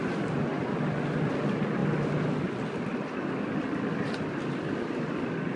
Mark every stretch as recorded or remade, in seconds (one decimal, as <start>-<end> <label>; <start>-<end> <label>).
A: 0.0-5.6 recorded